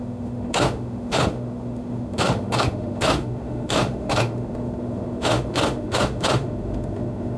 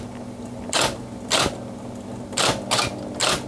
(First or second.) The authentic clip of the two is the second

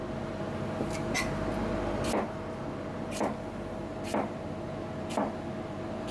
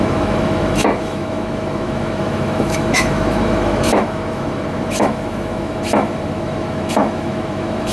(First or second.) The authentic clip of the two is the first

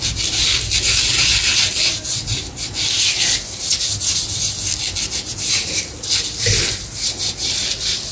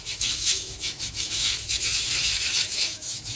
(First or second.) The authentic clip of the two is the first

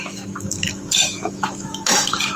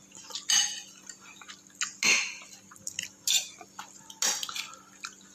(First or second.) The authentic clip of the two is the second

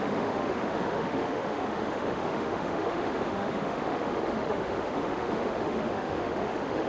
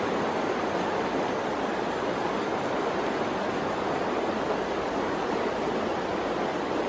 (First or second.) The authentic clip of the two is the second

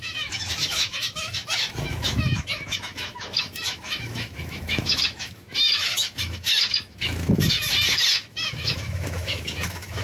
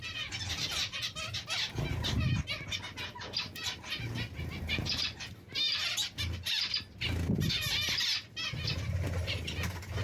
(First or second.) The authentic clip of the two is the second